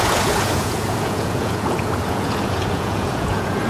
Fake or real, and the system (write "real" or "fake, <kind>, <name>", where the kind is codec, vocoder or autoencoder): fake, vocoder, Vocos